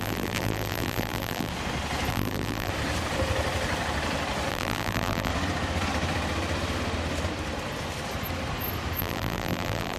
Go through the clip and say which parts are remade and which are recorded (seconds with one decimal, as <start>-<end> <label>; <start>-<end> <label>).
0.0-1.5 remade; 1.5-2.1 recorded; 2.1-2.7 remade; 2.7-4.5 recorded; 4.5-5.3 remade; 5.3-9.0 recorded; 9.0-10.0 remade

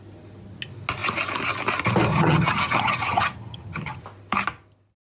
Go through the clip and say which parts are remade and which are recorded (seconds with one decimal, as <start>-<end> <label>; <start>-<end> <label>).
0.0-2.1 recorded; 2.1-4.0 remade; 4.0-5.0 recorded